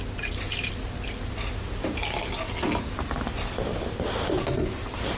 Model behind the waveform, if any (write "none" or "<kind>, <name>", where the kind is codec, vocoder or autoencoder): none